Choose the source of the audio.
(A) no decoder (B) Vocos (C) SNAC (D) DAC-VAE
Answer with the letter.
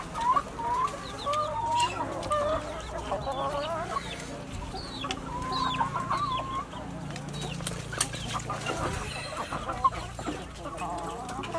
A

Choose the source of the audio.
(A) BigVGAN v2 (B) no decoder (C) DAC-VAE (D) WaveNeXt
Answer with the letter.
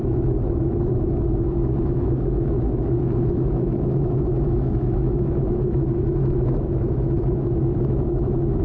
C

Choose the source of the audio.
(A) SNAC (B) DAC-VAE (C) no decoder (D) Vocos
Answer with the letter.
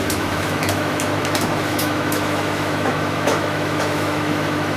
B